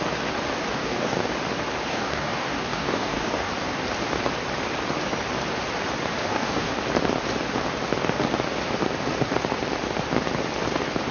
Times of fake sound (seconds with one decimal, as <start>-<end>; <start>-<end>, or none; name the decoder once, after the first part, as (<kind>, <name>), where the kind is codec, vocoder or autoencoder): 0.8-1.3 (codec, DAC); 1.9-3.5; 6.2-6.7